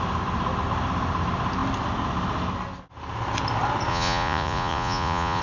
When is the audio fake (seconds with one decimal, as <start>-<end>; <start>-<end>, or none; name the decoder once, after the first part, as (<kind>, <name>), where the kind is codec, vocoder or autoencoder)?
3.9-5.4 (vocoder, Vocos)